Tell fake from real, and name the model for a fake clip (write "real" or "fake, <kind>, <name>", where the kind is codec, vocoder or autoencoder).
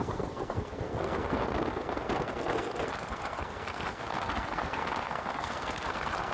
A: fake, codec, SNAC